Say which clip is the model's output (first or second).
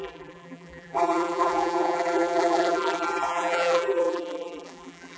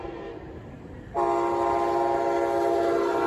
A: first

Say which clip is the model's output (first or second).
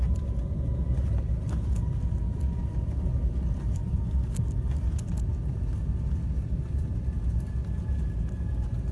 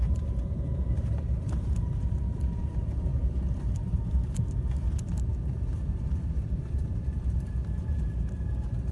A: second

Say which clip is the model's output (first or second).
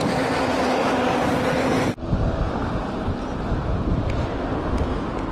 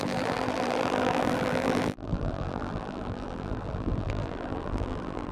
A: second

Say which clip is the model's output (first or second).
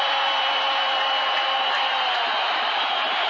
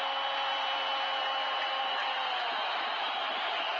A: first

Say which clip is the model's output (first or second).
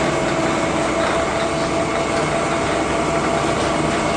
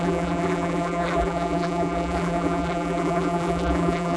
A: second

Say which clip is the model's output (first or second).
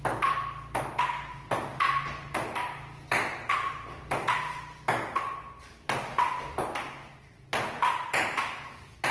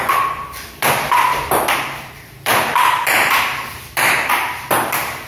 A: second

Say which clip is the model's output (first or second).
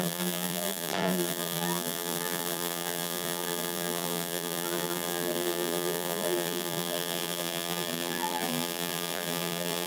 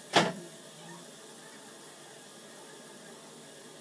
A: first